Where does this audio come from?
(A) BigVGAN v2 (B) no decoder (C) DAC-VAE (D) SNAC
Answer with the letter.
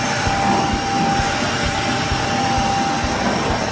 B